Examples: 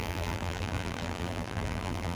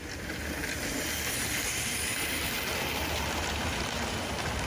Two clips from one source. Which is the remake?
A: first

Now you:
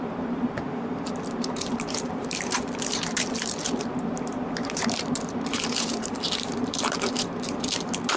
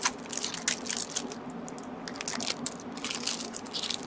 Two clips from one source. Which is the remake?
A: first